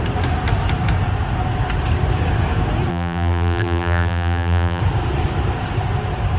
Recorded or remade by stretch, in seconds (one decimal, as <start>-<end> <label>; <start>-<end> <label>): 0.0-2.9 recorded; 2.9-4.8 remade; 4.8-6.4 recorded